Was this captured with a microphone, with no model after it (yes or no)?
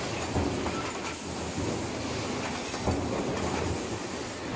yes